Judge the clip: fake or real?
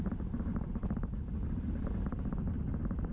real